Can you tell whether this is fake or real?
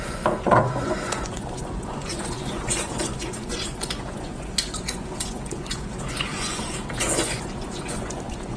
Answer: fake